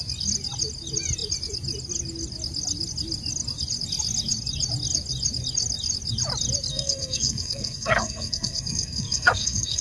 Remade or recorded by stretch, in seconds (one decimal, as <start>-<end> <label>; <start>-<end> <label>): 0.0-6.7 recorded; 6.7-9.8 remade

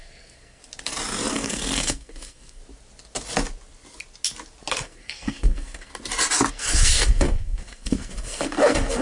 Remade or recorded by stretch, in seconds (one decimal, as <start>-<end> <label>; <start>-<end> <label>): 0.0-0.6 remade; 0.6-1.3 recorded; 1.3-2.6 remade; 2.6-4.7 recorded; 4.7-5.9 remade; 5.9-6.5 recorded; 6.5-9.0 remade

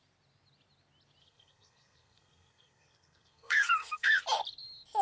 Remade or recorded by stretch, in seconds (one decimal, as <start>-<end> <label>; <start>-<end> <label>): 0.0-1.2 recorded; 1.2-4.2 remade; 4.2-5.0 recorded